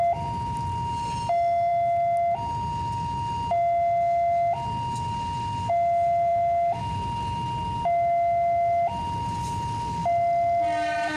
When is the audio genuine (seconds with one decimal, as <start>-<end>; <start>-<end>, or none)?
0.0-11.2

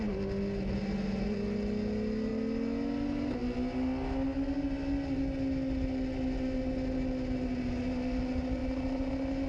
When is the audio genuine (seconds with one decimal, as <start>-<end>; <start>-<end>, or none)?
0.0-9.5

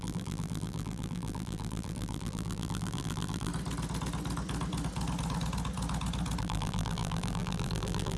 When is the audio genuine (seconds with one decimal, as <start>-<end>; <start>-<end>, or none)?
3.5-6.4

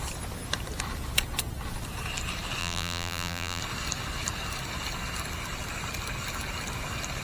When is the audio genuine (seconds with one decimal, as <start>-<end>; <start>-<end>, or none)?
0.0-2.6; 3.6-7.2

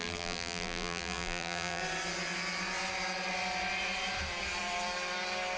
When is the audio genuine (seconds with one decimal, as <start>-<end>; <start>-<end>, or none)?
1.8-5.6

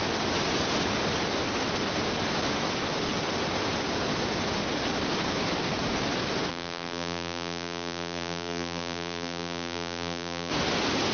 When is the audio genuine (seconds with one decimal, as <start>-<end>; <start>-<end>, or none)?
0.0-6.5; 10.5-11.1

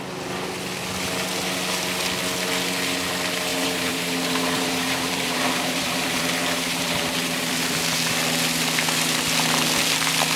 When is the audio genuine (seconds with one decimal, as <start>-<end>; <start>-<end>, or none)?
0.0-3.5; 7.5-10.4